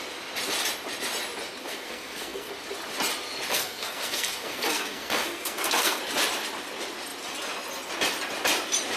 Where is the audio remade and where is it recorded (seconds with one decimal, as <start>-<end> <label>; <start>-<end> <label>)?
0.0-1.6 recorded; 1.6-2.5 remade; 2.5-3.5 recorded; 3.5-6.0 remade; 6.0-9.0 recorded